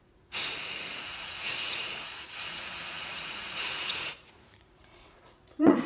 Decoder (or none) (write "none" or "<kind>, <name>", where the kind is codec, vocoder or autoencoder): vocoder, Vocos